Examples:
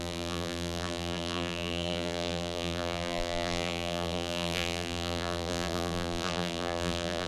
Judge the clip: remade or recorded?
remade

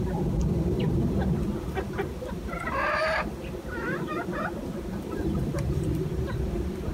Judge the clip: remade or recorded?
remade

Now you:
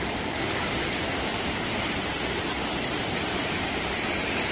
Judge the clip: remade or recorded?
remade